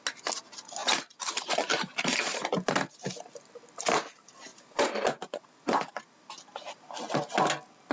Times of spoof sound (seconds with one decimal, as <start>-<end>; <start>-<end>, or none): 4.5-5.9